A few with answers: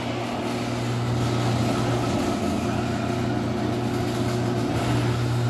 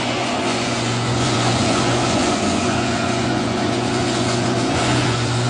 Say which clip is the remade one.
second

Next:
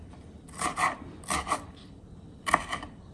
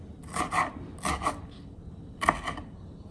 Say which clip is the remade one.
first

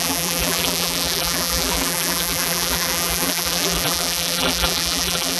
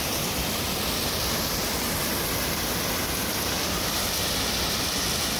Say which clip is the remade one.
first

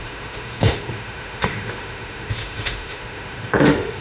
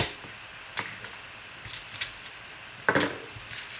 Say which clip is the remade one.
first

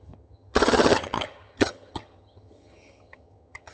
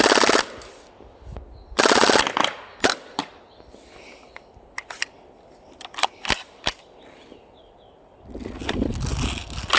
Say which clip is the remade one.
first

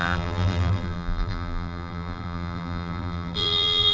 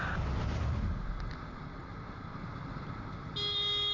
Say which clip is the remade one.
first